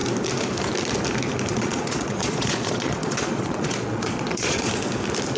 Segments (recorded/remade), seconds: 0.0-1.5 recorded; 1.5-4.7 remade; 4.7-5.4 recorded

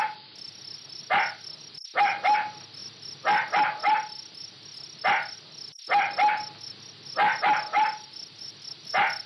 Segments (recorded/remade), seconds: 0.0-9.3 recorded

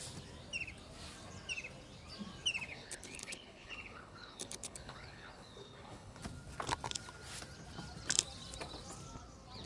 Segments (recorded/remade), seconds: 0.0-2.7 recorded; 2.7-6.2 remade; 6.2-9.7 recorded

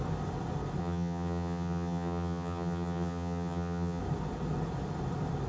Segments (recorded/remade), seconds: 0.0-0.8 recorded; 0.8-4.0 remade; 4.0-5.5 recorded

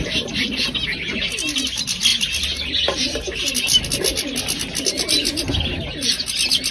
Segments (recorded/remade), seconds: 0.0-6.7 recorded